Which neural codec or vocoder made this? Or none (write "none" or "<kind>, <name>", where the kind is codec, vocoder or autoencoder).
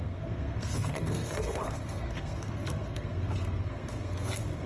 codec, SNAC